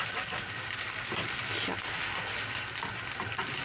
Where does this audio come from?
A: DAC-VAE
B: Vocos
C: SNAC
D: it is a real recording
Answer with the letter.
D